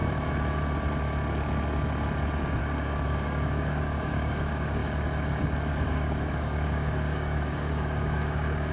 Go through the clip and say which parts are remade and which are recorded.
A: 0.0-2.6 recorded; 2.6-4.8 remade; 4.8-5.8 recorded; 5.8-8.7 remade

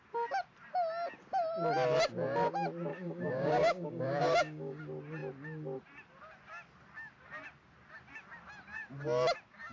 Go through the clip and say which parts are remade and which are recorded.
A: 0.0-2.9 recorded; 2.9-4.8 remade; 4.8-9.7 recorded